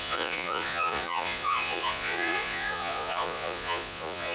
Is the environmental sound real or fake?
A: fake